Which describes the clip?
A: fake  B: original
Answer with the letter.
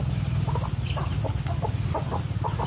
B